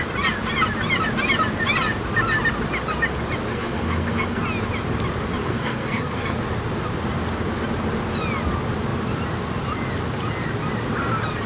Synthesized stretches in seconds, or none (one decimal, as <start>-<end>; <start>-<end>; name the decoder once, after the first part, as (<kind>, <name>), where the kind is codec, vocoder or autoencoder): 3.5-4.4 (codec, SNAC); 5.4-6.4